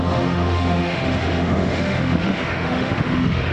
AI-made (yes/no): yes